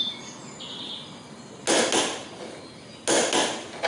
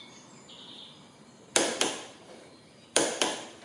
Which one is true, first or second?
first